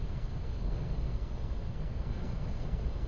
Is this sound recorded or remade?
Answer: remade